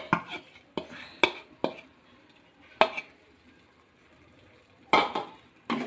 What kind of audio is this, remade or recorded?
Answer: recorded